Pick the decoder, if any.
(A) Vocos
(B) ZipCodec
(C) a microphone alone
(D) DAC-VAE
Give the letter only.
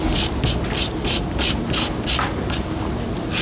C